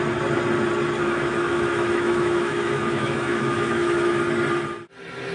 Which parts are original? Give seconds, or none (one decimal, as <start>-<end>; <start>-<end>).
0.0-1.0; 4.2-5.3